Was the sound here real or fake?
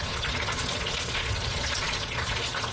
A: fake